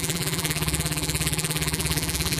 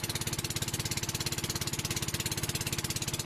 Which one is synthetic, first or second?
first